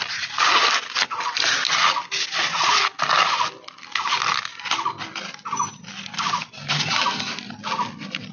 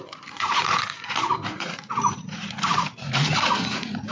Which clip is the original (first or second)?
first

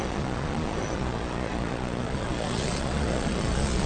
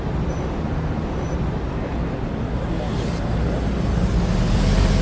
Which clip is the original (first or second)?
second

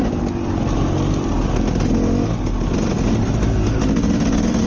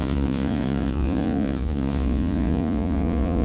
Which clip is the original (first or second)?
first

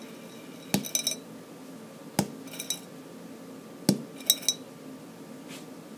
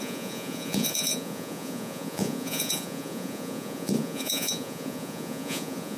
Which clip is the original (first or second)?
first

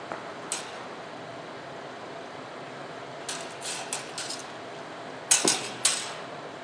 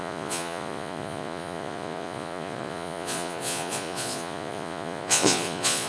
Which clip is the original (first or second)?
first